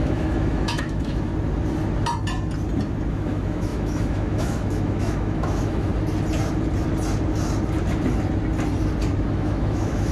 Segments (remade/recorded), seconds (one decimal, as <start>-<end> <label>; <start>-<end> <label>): 0.0-1.3 remade; 1.3-3.1 recorded; 3.1-5.9 remade; 5.9-9.3 recorded; 9.3-10.1 remade

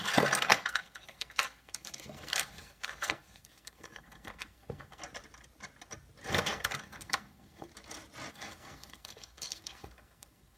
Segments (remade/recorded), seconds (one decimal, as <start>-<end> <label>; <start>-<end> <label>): 0.0-5.0 remade; 5.0-6.3 recorded; 6.3-7.7 remade; 7.7-8.3 recorded; 8.3-10.6 remade

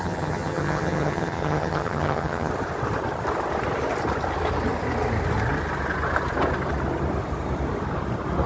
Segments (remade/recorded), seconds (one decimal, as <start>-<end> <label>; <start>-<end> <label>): 0.0-2.5 remade; 2.5-8.5 recorded

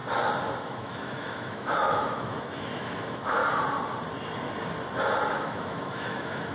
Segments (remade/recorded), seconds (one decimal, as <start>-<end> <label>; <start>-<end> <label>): 0.0-0.6 recorded; 0.6-3.4 remade; 3.4-5.3 recorded; 5.3-6.5 remade

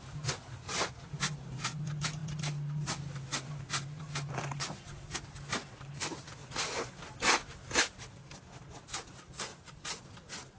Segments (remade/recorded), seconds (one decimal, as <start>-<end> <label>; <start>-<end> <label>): 0.0-10.6 recorded

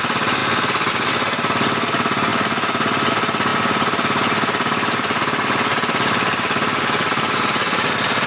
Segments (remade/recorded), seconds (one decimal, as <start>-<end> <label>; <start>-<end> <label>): 0.0-8.3 recorded